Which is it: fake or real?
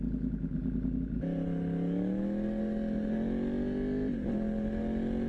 real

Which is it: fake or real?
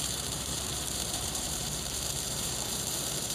fake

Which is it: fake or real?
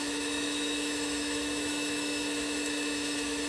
fake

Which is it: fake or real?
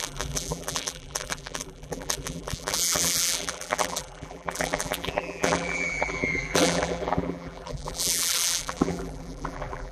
fake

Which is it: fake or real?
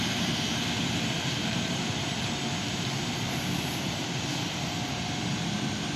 real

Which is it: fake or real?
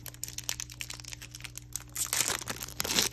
real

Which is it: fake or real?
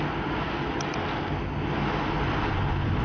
real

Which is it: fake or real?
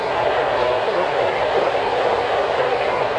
fake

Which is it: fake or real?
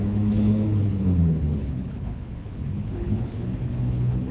fake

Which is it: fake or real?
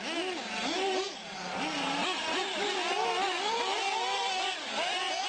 real